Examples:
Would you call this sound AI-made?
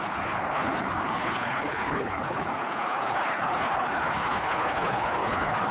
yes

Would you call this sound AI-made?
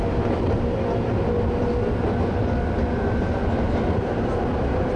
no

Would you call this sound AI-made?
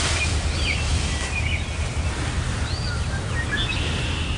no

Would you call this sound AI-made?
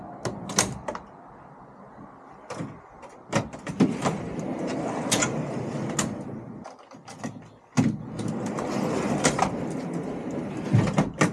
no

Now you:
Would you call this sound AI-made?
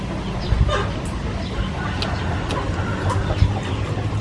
no